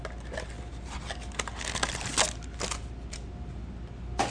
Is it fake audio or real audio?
real